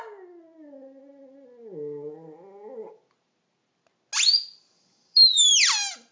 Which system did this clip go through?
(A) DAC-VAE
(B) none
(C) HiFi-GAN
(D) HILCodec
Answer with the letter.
B